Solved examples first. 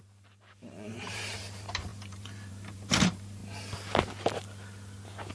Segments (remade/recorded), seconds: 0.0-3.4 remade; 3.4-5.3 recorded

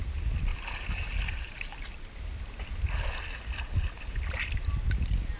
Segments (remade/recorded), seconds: 0.0-5.4 recorded

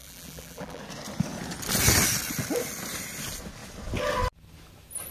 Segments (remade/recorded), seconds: 0.0-0.8 remade; 0.8-5.1 recorded